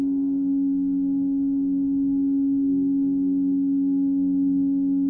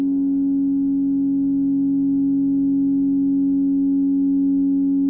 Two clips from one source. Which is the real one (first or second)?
second